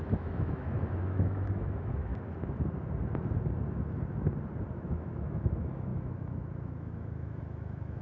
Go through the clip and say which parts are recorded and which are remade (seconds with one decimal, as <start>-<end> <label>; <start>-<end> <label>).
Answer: 0.0-2.1 remade; 2.1-4.7 recorded; 4.7-8.0 remade